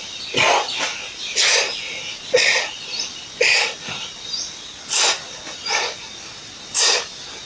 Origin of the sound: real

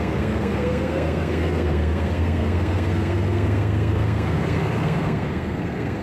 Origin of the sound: fake